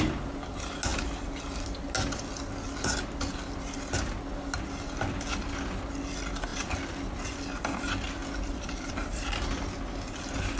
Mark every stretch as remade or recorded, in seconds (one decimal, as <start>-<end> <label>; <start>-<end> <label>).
0.0-8.2 recorded; 8.2-9.4 remade; 9.4-10.6 recorded